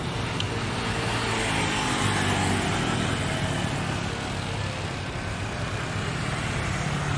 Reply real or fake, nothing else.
real